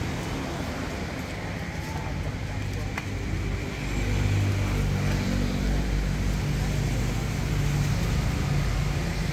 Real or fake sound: real